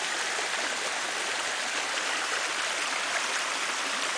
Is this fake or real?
real